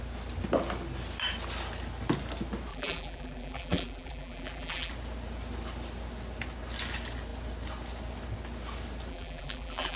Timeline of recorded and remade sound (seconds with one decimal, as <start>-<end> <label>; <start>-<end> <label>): 0.0-2.7 recorded; 2.7-4.9 remade; 4.9-9.1 recorded; 9.1-10.0 remade